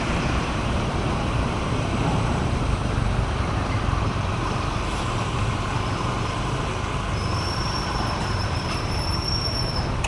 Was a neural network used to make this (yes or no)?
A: yes